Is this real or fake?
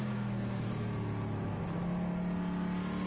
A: real